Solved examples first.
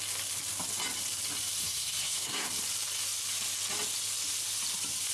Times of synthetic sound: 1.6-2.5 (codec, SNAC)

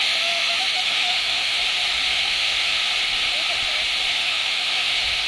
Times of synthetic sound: 0.0-1.6 (autoencoder, DAC-VAE); 2.1-2.8; 4.1-5.3

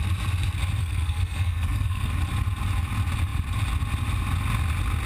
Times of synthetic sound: 0.8-2.1 (codec, SNAC)

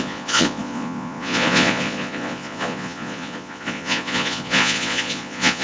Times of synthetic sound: 0.0-5.6 (vocoder, Vocos)